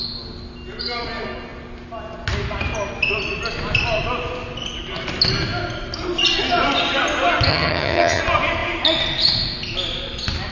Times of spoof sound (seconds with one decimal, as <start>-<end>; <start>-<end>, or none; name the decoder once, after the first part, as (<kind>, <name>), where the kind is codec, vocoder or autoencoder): 7.5-8.2 (vocoder, HiFi-GAN)